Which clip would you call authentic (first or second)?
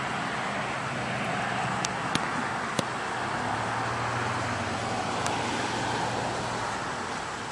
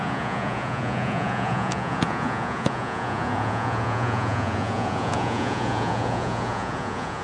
first